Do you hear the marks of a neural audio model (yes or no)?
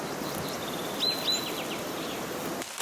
no